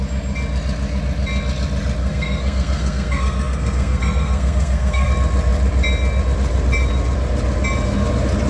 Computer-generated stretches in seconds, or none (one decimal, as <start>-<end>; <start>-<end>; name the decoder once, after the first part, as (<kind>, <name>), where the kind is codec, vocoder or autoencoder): 2.0-5.1 (codec, SNAC)